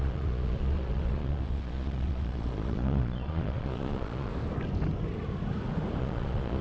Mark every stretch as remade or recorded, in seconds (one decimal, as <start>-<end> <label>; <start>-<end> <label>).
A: 0.0-4.3 remade; 4.3-6.0 recorded; 6.0-6.6 remade